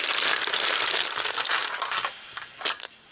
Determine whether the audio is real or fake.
real